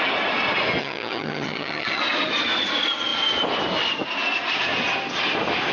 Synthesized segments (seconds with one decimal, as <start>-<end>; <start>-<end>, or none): 0.8-2.0